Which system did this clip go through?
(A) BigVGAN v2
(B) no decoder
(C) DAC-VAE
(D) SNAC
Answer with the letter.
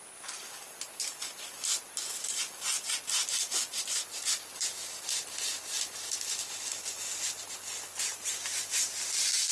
B